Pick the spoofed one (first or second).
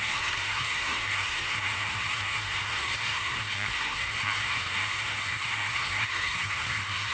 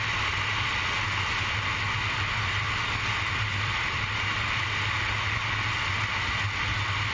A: first